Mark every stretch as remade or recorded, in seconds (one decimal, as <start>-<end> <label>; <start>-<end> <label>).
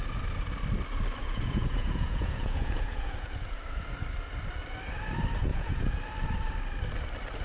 0.0-1.2 recorded; 1.2-3.6 remade; 3.6-5.5 recorded; 5.5-6.0 remade; 6.0-7.4 recorded